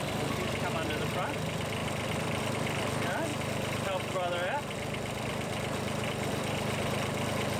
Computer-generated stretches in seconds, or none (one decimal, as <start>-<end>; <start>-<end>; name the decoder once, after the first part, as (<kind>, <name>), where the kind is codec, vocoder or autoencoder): 3.3-7.6 (vocoder, BigVGAN v2)